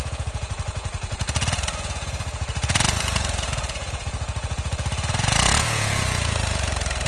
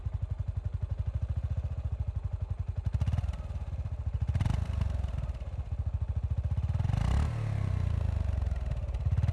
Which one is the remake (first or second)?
first